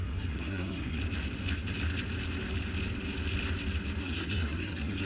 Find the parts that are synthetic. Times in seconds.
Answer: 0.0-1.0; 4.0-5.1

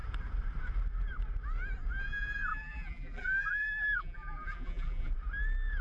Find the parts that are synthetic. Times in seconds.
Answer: 2.5-5.1